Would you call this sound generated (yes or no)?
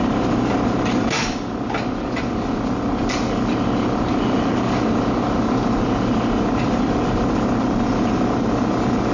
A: no